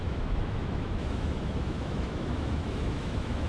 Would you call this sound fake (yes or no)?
yes